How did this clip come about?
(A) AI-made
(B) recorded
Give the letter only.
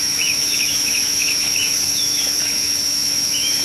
A